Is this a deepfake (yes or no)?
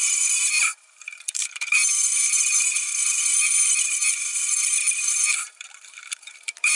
yes